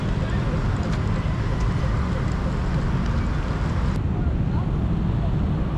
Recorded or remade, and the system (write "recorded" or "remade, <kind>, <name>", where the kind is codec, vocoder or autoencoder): recorded